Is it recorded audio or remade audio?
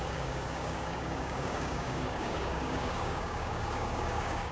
remade